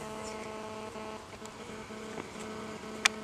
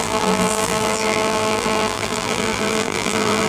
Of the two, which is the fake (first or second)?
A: second